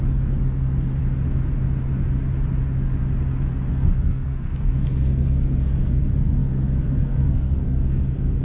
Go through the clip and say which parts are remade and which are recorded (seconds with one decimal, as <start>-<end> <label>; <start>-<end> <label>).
0.0-1.0 remade; 1.0-3.7 recorded; 3.7-8.4 remade